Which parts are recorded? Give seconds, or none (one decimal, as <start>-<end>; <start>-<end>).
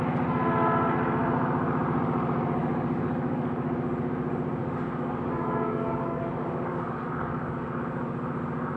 0.0-2.6; 3.7-4.6; 7.8-8.8